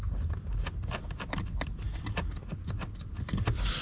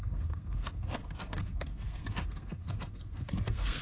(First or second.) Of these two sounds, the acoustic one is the first